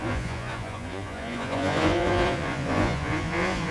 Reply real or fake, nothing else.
fake